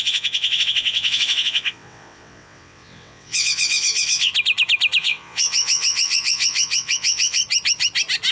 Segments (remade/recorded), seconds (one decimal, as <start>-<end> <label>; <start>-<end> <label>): 0.0-4.3 remade; 4.3-5.0 recorded; 5.0-7.4 remade; 7.4-8.3 recorded